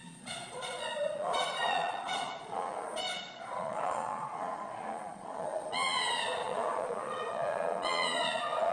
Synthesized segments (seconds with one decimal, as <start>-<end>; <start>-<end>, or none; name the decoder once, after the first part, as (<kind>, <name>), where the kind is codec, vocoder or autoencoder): 0.0-8.7 (vocoder, Vocos)